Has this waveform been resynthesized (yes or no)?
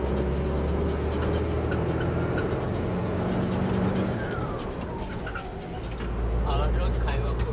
no